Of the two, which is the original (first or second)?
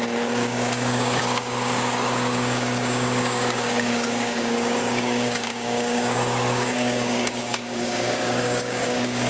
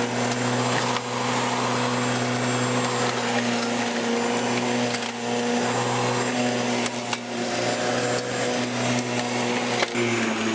second